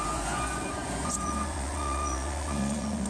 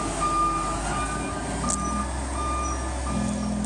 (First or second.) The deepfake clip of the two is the first